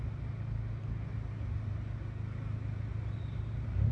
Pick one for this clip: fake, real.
real